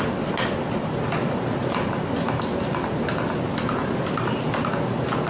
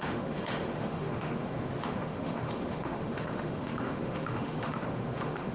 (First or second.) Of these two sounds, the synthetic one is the second